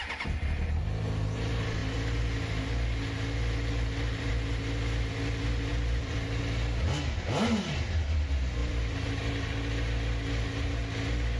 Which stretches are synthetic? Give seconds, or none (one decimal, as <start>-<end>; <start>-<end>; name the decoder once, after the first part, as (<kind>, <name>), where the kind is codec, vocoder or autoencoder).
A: 5.7-6.4 (vocoder, BigVGAN v2); 8.6-9.3